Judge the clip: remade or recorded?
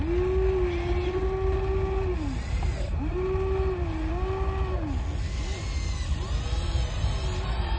recorded